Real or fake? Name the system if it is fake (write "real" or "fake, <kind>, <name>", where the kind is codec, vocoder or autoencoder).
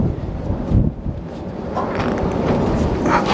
fake, vocoder, BigVGAN v2